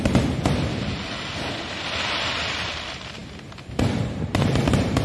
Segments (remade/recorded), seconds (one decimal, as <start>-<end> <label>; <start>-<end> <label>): 0.0-3.2 remade; 3.2-3.8 recorded; 3.8-5.0 remade